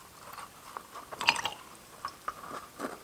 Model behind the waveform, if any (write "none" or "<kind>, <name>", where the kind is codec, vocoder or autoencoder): vocoder, BigVGAN v2